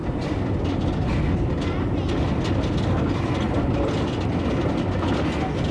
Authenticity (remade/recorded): recorded